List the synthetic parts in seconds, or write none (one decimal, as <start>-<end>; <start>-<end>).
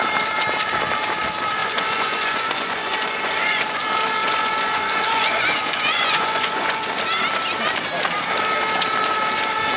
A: 1.6-3.8; 4.2-6.9